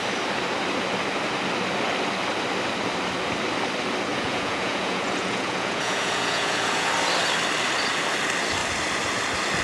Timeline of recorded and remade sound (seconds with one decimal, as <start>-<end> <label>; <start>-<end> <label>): 0.0-4.1 recorded; 4.1-6.9 remade; 6.9-9.6 recorded